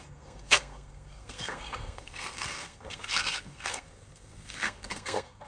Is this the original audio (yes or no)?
no